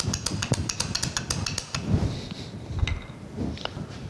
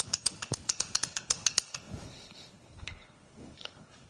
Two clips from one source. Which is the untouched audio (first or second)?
first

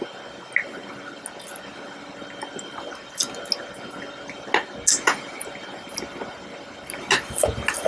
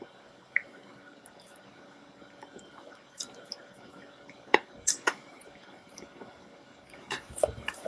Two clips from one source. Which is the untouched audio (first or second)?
first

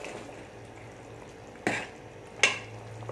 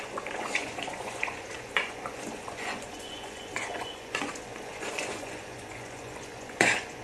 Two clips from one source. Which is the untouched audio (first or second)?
first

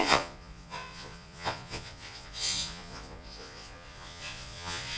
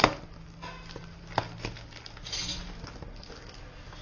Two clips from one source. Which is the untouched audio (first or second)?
second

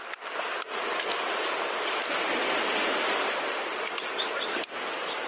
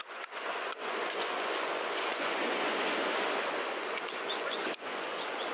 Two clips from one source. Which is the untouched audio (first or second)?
first